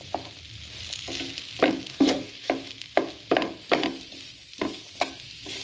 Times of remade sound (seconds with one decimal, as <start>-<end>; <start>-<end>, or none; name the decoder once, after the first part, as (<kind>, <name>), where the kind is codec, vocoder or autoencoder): 1.9-2.5 (codec, DAC)

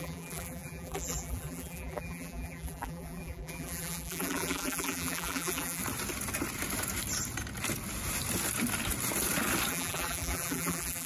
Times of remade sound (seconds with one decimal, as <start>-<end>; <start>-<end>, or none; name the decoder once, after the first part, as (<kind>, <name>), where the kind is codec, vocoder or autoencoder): 0.0-5.8 (vocoder, BigVGAN v2); 9.7-11.1

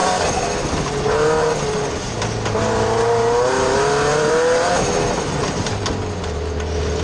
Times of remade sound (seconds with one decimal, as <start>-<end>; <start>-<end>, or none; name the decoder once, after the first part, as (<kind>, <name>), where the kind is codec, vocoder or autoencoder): 4.1-4.7 (vocoder, BigVGAN v2); 5.4-5.9

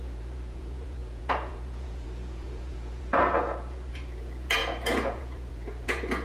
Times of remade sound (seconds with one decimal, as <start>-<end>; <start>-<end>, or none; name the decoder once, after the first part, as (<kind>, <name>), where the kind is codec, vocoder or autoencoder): 0.0-6.2 (vocoder, Vocos)

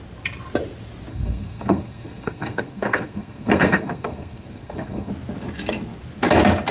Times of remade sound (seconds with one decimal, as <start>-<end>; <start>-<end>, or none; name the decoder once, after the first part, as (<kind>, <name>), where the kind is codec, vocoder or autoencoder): 1.1-5.1 (codec, SNAC)